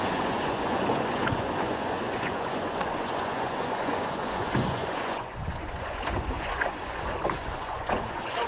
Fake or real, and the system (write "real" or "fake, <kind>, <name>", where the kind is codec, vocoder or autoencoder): fake, vocoder, Vocos